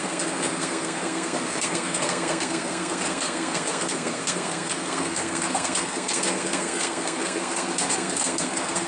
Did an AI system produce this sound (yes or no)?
yes